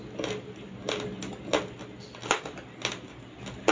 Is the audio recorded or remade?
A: recorded